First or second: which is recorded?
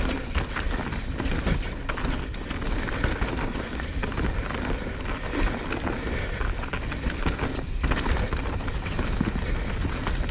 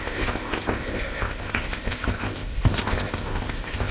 first